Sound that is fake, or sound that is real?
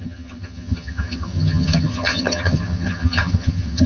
fake